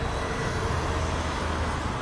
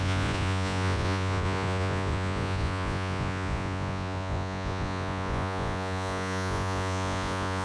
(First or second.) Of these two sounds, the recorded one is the first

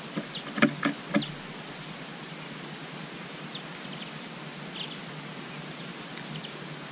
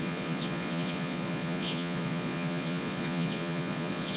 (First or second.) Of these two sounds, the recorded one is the first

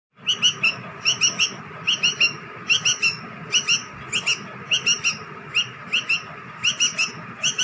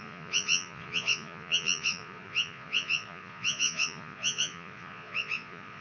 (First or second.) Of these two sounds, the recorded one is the first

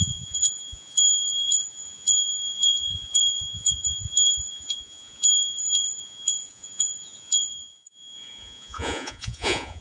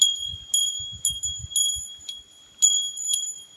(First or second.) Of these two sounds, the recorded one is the second